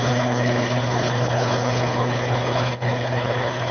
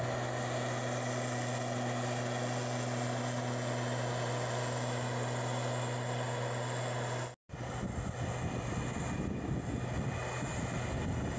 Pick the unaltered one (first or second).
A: second